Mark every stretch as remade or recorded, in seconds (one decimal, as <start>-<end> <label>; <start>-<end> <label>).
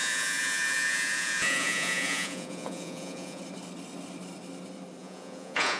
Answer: 0.0-3.4 remade; 3.4-5.0 recorded; 5.0-5.8 remade